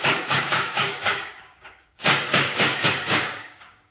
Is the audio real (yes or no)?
no